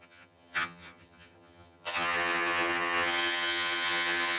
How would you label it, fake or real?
fake